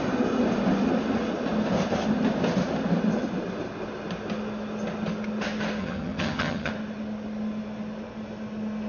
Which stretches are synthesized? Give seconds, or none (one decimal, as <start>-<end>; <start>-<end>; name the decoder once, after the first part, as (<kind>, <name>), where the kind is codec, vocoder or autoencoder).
5.8-6.7 (vocoder, HiFi-GAN)